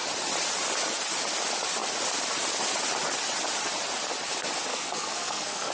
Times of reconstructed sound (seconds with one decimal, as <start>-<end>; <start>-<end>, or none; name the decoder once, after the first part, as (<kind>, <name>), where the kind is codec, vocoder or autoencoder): 4.7-5.7 (codec, SNAC)